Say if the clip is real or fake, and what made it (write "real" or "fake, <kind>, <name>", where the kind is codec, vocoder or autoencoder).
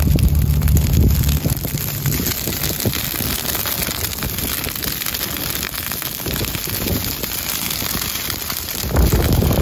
real